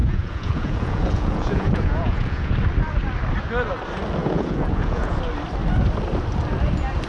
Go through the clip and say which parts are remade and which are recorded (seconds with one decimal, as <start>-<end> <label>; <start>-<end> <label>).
0.0-2.5 remade; 2.5-4.2 recorded; 4.2-5.2 remade; 5.2-7.1 recorded